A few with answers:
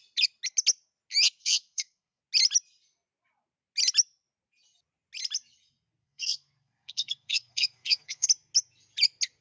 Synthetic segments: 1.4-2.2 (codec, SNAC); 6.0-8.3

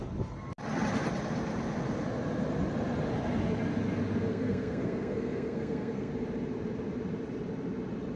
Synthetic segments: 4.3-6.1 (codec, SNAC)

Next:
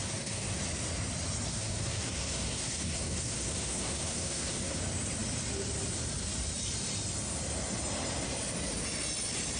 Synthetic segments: 0.0-0.6 (codec, SNAC); 1.5-4.8

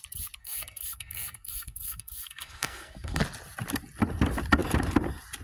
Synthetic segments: 0.4-3.2 (codec, SNAC)

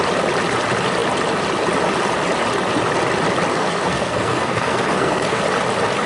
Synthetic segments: 3.5-5.4 (codec, SNAC)

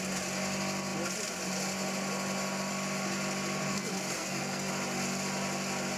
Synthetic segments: 3.7-4.7 (codec, SNAC)

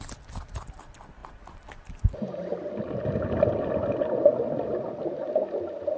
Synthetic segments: none

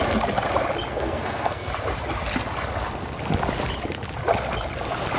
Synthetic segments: 0.9-1.7 (codec, SNAC)